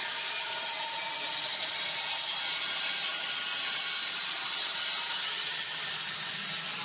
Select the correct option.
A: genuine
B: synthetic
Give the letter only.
A